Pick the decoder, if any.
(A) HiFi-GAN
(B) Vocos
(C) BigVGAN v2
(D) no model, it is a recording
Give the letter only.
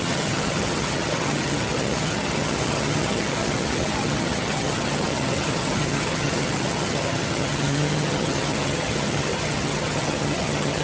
A